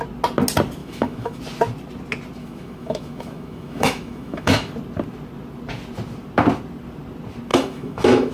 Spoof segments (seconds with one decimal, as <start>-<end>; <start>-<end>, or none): 0.8-1.4; 2.4-4.7; 7.5-8.3